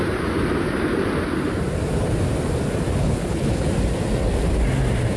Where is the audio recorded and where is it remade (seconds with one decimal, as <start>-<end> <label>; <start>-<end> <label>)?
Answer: 0.0-3.0 recorded; 3.0-3.7 remade; 3.7-5.2 recorded